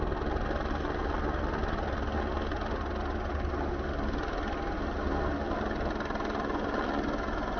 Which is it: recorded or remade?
recorded